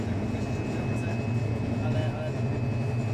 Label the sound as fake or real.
real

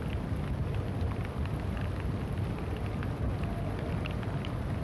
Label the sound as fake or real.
real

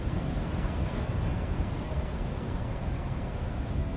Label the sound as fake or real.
fake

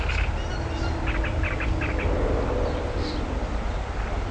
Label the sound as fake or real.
real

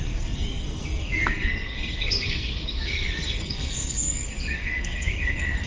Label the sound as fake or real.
fake